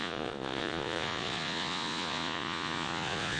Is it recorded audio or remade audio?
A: remade